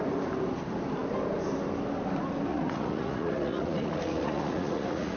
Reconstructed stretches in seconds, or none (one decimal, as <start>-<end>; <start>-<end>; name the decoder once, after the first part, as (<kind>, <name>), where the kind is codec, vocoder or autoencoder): 2.5-5.2 (vocoder, Vocos)